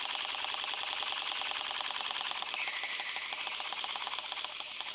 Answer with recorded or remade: recorded